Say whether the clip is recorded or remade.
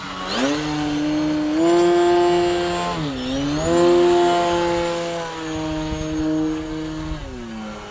recorded